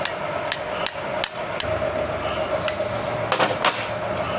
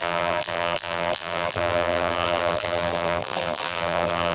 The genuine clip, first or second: first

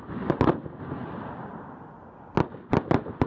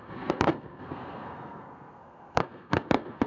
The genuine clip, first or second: first